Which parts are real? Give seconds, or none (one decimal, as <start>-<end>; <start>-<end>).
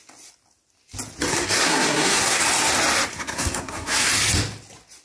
0.0-1.3; 2.4-3.1; 4.1-5.0